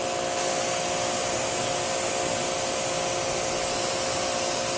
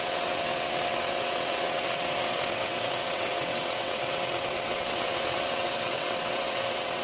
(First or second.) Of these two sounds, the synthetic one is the second